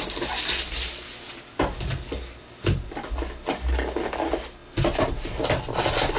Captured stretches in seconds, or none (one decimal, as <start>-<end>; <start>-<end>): 0.0-6.2